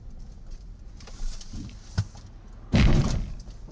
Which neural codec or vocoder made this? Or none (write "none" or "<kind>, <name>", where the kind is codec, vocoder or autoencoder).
none